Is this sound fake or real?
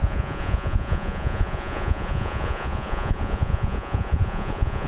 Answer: fake